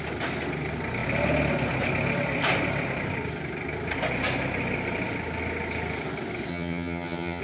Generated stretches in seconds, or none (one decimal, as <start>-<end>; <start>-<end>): 6.5-7.4